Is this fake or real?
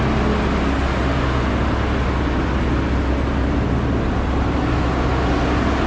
real